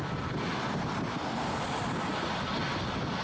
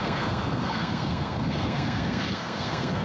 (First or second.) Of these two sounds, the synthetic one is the second